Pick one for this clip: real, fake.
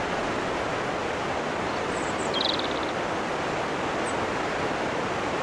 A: real